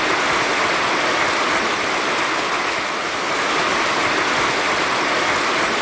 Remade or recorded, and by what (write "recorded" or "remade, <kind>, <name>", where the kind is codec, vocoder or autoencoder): recorded